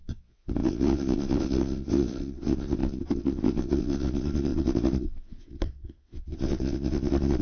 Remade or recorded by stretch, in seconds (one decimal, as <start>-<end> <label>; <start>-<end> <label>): 0.0-7.4 remade